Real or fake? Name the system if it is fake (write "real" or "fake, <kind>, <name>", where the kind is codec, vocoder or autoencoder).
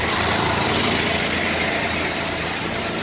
real